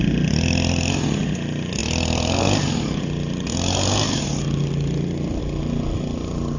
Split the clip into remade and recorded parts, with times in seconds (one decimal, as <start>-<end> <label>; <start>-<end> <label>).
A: 0.0-6.6 recorded